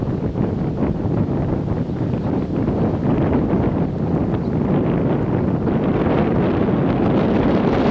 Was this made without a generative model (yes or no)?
yes